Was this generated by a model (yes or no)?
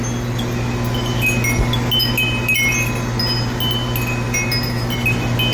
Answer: no